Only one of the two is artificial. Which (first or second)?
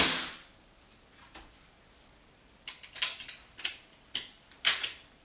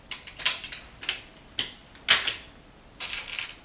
first